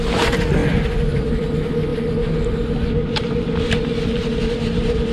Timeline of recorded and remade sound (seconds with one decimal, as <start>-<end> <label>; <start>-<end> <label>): 0.0-5.1 recorded